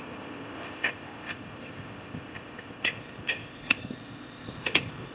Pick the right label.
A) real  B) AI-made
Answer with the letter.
B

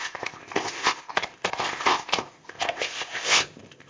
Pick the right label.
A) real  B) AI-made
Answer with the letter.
B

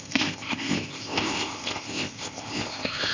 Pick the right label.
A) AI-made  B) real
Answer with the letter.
A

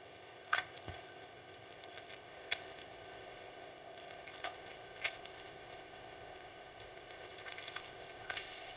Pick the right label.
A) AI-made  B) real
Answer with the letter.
A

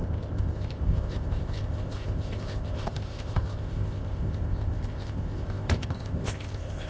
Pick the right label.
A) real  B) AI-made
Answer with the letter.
B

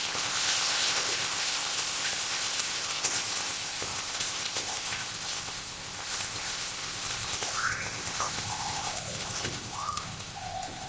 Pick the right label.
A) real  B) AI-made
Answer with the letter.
B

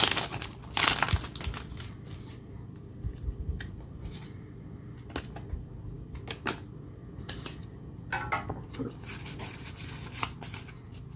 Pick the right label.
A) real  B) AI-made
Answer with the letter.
A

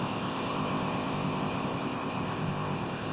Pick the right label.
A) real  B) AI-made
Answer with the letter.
B